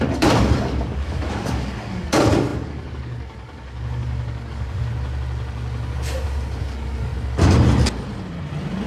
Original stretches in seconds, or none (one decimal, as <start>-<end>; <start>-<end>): 4.9-6.6; 7.1-8.9

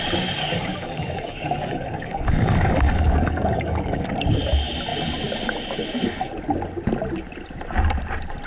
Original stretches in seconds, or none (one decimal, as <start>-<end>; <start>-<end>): 0.0-0.4; 4.1-8.5

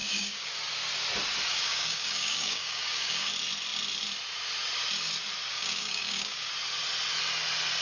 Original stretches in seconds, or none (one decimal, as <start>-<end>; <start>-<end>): 0.5-1.5; 3.3-5.5; 6.5-7.8

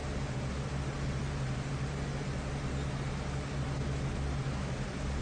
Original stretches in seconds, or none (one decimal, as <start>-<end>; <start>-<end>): 0.0-5.2